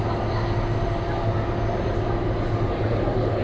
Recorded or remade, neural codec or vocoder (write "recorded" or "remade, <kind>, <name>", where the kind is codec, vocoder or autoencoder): recorded